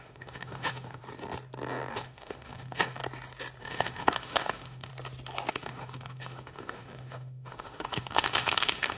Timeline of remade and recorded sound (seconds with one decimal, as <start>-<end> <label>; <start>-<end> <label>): 0.0-1.0 remade; 1.0-1.9 recorded; 1.9-3.0 remade; 3.0-3.6 recorded; 3.6-4.9 remade; 4.9-5.5 recorded; 5.5-9.0 remade